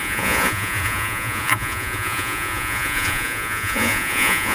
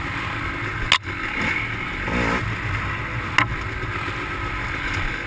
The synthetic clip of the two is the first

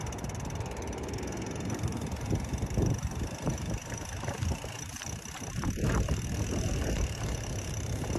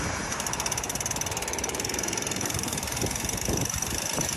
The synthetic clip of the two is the second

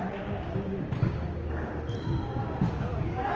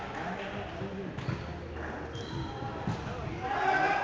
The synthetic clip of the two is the first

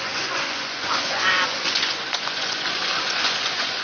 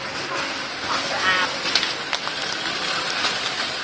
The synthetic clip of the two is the first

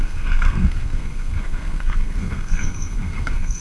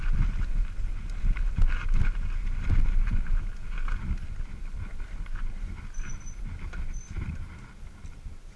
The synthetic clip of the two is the first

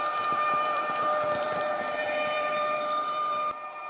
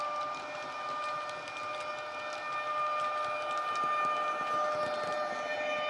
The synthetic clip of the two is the first